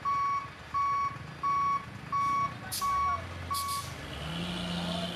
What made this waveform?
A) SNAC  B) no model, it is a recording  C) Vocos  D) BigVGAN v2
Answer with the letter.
B